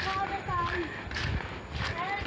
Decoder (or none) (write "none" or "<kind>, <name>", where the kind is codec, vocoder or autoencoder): none